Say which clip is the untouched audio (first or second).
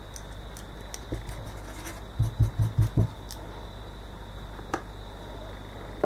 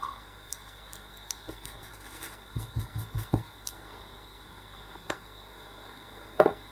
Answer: first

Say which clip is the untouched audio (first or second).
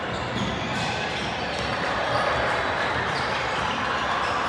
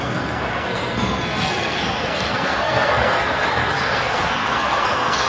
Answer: first